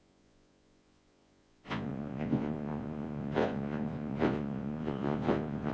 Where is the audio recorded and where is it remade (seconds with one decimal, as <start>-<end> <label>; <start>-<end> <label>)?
0.0-5.7 remade